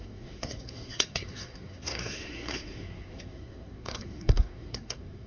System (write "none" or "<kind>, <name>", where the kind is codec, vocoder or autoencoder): codec, SNAC